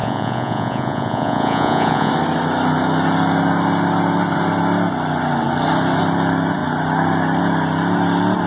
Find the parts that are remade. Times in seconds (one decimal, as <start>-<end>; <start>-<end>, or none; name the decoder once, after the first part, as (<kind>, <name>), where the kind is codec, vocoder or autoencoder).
0.0-2.1 (vocoder, Vocos)